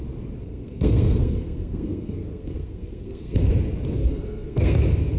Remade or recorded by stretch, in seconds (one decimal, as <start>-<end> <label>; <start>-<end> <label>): 0.0-0.4 recorded; 0.4-3.5 remade; 3.5-4.0 recorded; 4.0-4.8 remade; 4.8-5.2 recorded